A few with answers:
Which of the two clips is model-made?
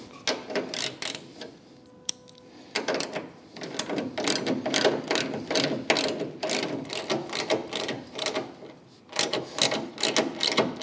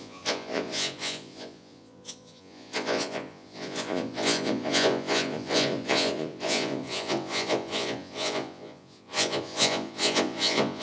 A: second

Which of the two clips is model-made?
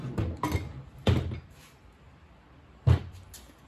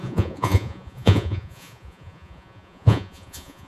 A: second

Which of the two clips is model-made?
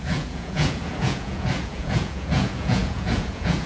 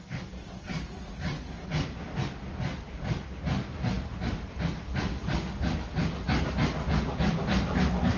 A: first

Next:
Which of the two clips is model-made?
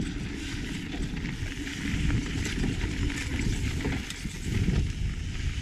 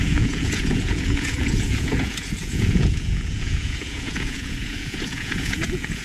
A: second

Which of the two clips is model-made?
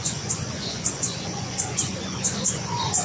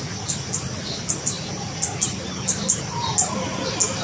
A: first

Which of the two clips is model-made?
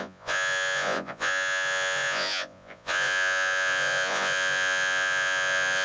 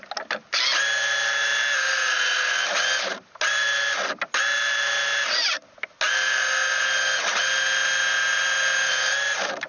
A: first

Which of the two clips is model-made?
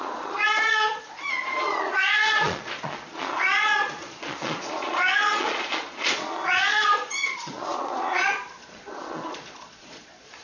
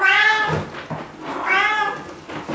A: first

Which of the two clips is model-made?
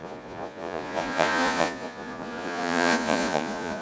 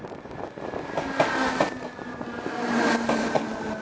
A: first